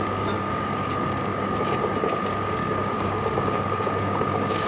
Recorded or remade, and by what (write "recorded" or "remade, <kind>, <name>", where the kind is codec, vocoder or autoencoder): remade, codec, DAC